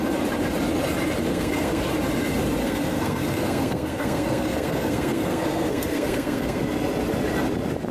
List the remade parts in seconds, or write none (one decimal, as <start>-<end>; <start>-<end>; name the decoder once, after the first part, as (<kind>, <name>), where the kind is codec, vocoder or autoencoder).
1.3-1.8 (codec, SNAC); 2.6-6.6